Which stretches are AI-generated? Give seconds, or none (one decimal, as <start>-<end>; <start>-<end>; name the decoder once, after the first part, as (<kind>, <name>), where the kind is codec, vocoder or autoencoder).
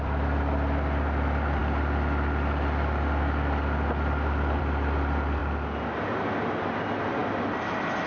none